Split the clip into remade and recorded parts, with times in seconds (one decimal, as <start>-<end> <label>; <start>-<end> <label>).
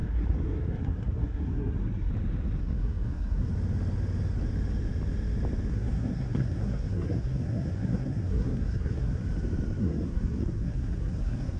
0.0-2.1 remade; 2.1-2.6 recorded; 2.6-3.5 remade; 3.5-5.7 recorded; 5.7-9.2 remade; 9.2-9.8 recorded; 9.8-11.6 remade